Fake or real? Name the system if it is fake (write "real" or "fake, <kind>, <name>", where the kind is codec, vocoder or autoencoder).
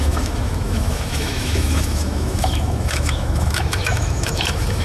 fake, autoencoder, DAC-VAE